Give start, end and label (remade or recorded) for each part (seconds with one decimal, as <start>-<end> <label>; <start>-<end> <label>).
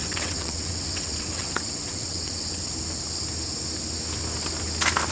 0.0-2.7 remade; 2.7-5.1 recorded